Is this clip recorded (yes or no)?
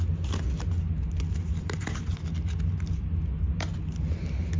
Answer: yes